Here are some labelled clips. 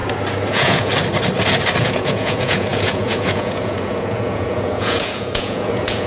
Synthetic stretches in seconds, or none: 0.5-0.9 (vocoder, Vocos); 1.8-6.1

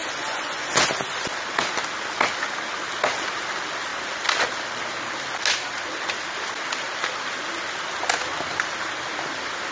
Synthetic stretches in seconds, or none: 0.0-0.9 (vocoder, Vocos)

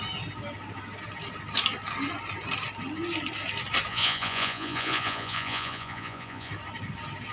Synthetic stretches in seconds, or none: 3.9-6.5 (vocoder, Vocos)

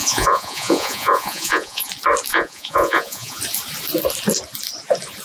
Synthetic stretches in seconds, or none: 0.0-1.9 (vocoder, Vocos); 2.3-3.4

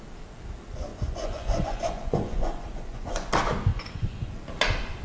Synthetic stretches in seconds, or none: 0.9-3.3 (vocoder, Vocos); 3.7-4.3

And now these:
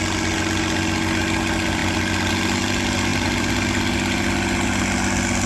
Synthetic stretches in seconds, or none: none